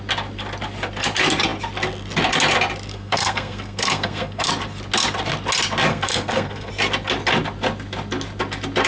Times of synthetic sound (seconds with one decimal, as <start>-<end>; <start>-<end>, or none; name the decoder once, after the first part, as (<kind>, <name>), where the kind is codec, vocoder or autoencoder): 2.9-4.5 (codec, SNAC); 5.9-6.7